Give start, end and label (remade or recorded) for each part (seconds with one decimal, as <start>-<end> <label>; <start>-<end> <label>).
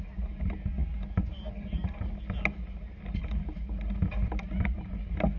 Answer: 0.0-5.4 recorded